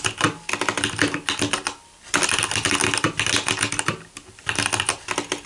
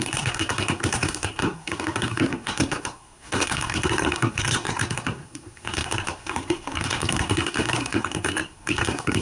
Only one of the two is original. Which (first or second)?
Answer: first